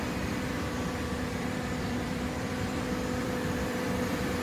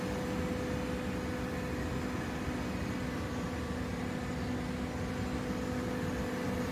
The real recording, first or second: second